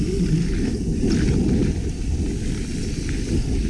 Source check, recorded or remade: recorded